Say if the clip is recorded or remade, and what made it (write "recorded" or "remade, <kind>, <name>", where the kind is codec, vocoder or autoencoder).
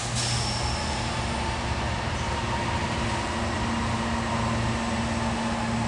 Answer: recorded